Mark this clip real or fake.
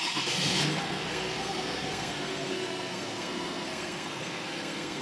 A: fake